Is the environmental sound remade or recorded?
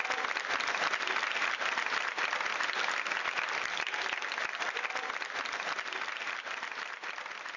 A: recorded